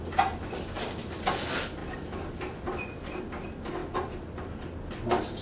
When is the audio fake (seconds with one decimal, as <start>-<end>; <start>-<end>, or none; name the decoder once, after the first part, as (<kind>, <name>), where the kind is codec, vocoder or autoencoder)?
none